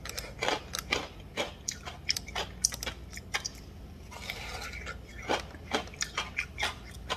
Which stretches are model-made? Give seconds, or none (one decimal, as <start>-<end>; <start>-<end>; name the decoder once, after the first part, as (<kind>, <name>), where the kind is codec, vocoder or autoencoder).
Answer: none